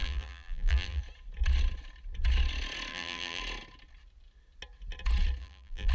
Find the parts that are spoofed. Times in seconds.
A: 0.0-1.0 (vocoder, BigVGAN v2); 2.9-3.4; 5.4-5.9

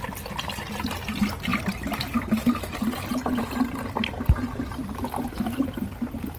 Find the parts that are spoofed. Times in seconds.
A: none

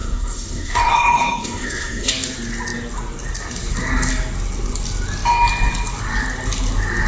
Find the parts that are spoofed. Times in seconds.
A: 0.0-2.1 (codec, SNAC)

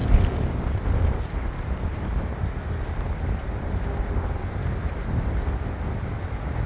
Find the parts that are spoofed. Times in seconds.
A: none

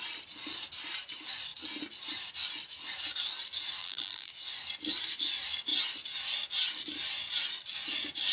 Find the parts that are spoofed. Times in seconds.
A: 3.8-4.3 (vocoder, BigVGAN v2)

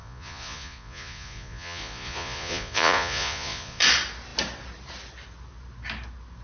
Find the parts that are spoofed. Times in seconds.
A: 0.0-3.8 (vocoder, Vocos)

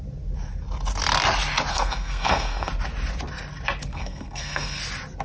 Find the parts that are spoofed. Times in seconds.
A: 1.7-2.7 (codec, SNAC); 3.9-4.8